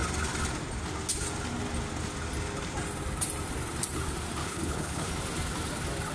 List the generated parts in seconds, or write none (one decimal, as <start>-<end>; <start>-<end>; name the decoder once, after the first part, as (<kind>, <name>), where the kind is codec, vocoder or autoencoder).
4.4-5.1 (codec, HILCodec)